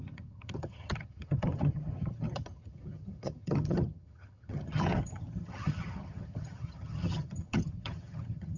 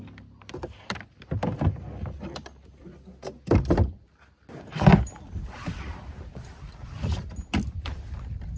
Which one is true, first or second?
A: second